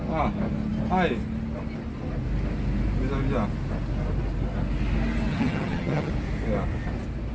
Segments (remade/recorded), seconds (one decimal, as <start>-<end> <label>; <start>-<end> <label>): 0.0-5.3 recorded; 5.3-6.1 remade; 6.1-7.3 recorded